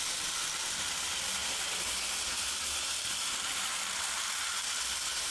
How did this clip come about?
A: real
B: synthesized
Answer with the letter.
A